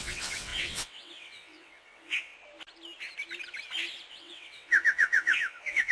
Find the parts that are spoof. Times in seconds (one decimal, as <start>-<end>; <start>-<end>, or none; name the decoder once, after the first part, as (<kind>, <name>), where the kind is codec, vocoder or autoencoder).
0.0-2.3 (vocoder, WaveNeXt); 4.1-5.9

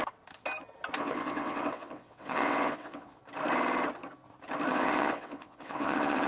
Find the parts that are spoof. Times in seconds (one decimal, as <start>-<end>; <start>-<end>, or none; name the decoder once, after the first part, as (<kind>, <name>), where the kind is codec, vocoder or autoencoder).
1.0-3.2 (vocoder, WaveNeXt); 4.7-6.3

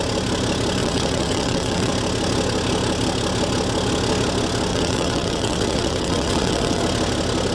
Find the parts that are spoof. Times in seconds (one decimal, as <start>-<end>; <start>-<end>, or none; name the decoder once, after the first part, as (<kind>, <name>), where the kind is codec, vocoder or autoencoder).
0.8-1.9 (vocoder, WaveNeXt); 4.7-6.8

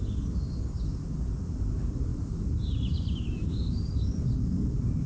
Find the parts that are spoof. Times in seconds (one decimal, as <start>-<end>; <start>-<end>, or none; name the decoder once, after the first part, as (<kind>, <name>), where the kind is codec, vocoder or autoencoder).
none

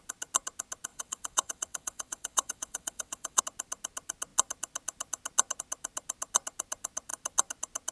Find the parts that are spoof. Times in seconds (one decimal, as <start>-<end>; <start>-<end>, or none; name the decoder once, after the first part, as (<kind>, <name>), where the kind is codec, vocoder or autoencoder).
0.9-3.4 (vocoder, WaveNeXt)